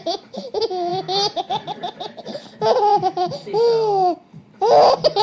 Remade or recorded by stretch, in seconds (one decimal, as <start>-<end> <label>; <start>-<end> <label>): 0.0-5.2 recorded